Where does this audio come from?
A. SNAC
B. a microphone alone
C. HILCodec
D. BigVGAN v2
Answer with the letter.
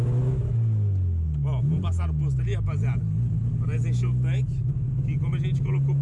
B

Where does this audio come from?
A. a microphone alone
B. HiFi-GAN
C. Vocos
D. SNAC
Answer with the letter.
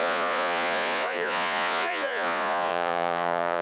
C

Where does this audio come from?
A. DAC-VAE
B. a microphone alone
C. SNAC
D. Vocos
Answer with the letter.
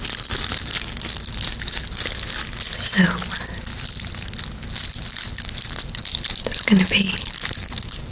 B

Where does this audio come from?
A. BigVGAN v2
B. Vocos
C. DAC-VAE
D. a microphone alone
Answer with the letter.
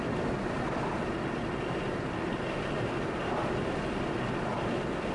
D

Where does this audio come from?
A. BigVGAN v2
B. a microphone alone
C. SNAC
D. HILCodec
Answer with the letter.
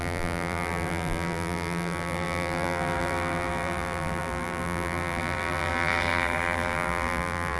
A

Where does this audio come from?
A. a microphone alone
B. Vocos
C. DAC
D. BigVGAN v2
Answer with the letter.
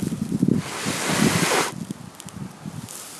A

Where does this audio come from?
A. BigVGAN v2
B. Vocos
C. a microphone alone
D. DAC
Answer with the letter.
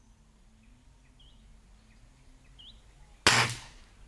C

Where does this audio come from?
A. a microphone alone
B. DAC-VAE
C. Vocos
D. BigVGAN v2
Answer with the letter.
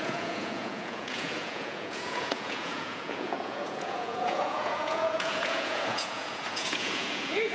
C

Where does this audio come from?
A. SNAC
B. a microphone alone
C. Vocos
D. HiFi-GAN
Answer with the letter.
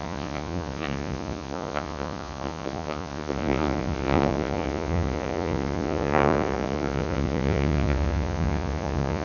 C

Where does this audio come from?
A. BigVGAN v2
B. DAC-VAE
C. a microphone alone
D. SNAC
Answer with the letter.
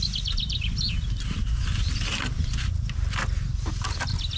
C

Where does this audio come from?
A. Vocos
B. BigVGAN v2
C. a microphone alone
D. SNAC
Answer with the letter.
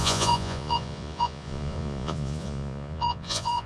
A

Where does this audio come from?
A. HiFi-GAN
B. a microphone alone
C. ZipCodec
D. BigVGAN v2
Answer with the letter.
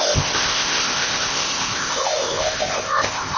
C